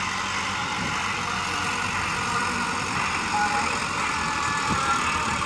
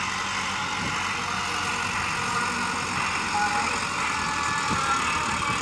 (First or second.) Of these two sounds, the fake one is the first